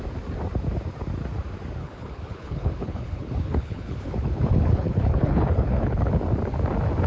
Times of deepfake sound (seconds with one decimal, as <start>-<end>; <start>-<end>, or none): 1.8-6.1